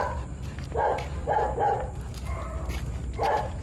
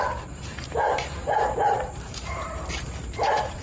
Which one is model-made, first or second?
second